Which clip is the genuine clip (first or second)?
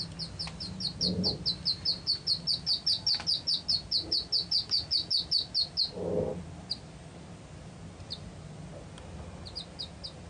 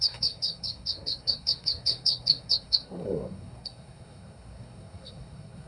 first